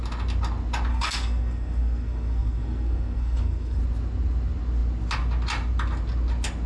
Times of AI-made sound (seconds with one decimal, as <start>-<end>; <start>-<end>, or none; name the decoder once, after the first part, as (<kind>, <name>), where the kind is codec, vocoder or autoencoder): 0.9-3.8 (codec, SNAC)